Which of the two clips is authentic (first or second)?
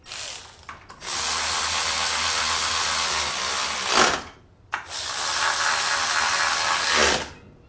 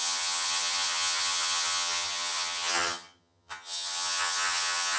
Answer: first